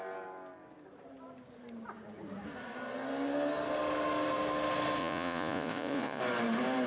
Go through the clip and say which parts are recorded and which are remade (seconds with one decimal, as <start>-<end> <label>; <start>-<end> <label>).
0.0-5.0 recorded; 5.0-6.2 remade; 6.2-6.9 recorded